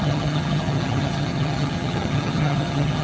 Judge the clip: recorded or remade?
remade